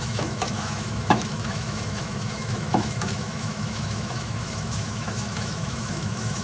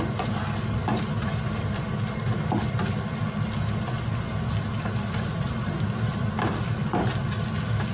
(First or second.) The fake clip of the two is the first